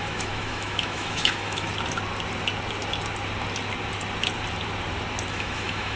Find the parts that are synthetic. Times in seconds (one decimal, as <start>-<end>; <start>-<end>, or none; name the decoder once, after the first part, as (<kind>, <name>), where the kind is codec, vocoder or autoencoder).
0.0-1.7 (autoencoder, DAC-VAE); 5.3-6.0